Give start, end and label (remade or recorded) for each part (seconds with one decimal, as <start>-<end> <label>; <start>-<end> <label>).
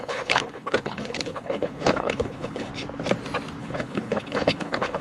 0.0-2.7 remade; 2.7-3.6 recorded; 3.6-5.0 remade